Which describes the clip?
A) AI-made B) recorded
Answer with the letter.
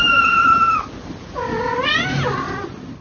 B